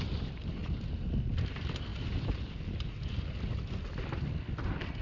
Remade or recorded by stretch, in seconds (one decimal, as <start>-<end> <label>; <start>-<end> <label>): 0.0-5.0 recorded